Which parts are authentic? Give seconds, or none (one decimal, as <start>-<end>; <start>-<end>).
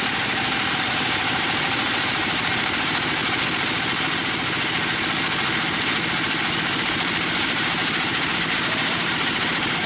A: 3.2-6.8